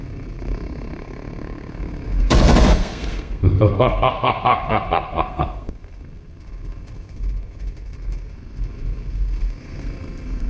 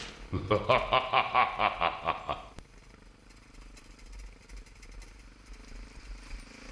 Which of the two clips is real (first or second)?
second